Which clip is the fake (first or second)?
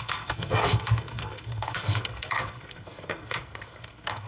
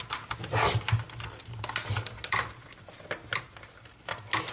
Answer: first